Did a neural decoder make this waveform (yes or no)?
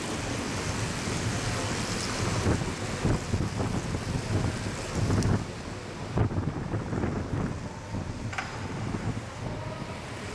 no